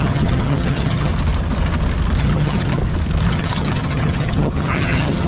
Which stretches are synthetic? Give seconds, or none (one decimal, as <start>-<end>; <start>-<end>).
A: 0.0-1.1; 2.2-2.8; 3.3-5.3